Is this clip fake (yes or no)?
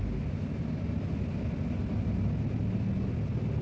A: no